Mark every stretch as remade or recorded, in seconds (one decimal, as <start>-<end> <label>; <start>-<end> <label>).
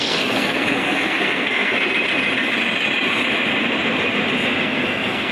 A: 0.0-1.7 remade; 1.7-4.6 recorded; 4.6-5.3 remade